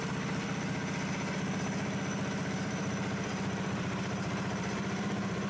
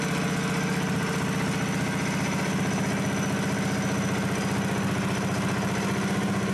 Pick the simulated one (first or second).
first